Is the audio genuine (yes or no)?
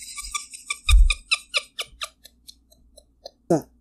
yes